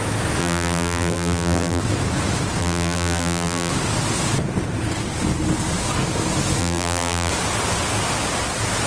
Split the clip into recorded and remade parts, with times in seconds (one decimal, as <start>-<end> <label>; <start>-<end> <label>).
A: 0.0-0.4 recorded; 0.4-1.8 remade; 1.8-2.6 recorded; 2.6-3.7 remade; 3.7-6.6 recorded; 6.6-7.3 remade; 7.3-8.9 recorded